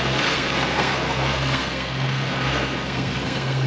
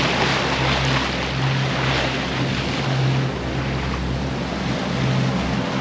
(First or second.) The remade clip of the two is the first